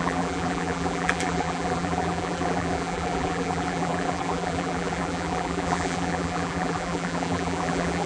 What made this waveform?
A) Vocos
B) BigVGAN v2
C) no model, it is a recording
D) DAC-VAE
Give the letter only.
B